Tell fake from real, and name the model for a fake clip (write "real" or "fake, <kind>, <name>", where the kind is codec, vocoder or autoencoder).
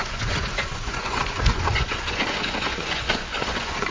fake, vocoder, Vocos